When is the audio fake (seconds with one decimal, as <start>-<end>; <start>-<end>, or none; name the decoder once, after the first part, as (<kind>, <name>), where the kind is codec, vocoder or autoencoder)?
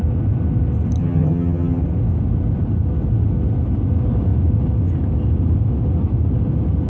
1.0-1.8 (vocoder, HiFi-GAN)